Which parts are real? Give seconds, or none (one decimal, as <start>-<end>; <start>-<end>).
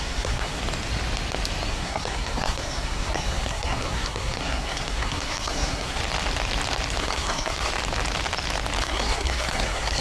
0.6-1.7; 6.0-7.0; 7.7-8.8